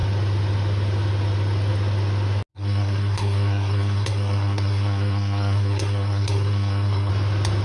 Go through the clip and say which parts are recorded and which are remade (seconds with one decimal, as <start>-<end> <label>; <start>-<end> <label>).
0.0-2.5 recorded; 2.5-7.1 remade; 7.1-7.6 recorded